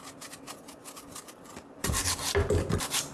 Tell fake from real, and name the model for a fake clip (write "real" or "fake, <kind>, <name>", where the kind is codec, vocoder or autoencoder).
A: real